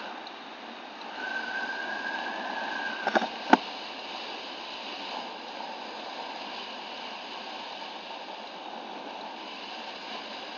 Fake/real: real